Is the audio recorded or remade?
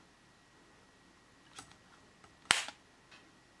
recorded